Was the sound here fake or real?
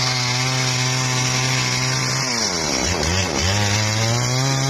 real